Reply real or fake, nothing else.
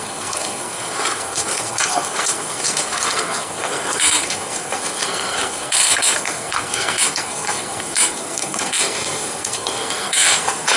fake